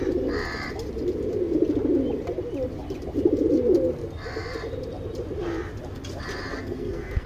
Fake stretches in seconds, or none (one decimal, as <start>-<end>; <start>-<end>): 6.5-7.3